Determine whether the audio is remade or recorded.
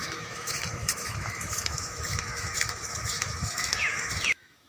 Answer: remade